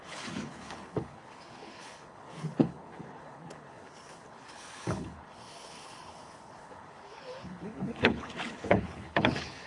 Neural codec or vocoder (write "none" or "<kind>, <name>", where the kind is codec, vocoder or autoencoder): codec, HILCodec